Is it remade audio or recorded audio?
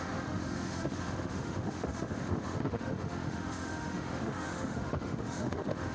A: remade